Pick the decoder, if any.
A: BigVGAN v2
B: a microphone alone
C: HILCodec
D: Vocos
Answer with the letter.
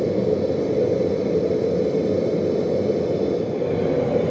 B